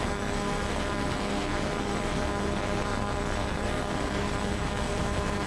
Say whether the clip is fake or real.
fake